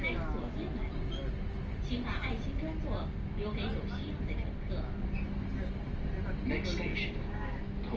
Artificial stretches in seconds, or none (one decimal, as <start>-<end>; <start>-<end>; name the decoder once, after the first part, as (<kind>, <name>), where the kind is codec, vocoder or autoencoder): 6.9-7.6 (codec, DAC)

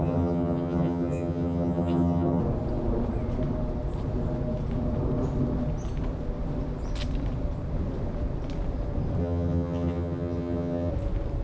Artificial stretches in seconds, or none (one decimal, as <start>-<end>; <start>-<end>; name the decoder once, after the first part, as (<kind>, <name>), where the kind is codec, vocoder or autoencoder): 0.0-2.4 (vocoder, HiFi-GAN); 9.2-10.9